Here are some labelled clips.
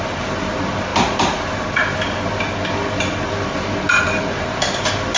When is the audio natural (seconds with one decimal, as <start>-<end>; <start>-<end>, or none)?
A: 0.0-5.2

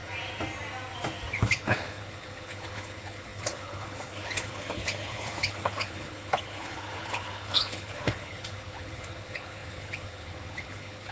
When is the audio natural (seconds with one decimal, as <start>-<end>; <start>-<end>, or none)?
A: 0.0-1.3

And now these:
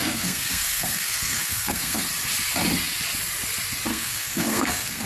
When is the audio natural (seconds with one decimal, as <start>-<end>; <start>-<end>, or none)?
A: 2.0-3.9

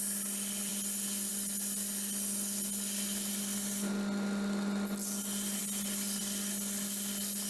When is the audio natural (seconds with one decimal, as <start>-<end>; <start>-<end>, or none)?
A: 0.0-7.5